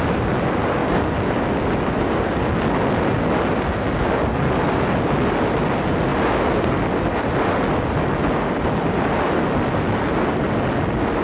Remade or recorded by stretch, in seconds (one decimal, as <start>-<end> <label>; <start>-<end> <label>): 0.0-11.2 recorded